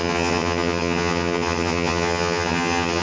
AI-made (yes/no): yes